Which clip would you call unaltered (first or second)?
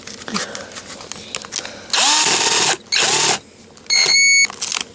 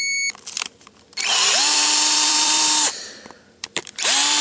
first